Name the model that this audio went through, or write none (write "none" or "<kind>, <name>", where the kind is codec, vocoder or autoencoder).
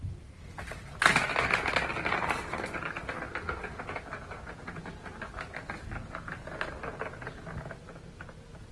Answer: none